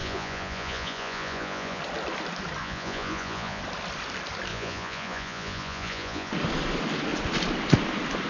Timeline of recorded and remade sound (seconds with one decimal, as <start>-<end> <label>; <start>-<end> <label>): 0.0-1.8 remade; 1.8-2.6 recorded; 2.6-3.6 remade; 3.6-4.5 recorded; 4.5-6.3 remade; 6.3-8.3 recorded